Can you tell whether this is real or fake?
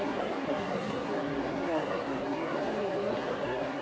fake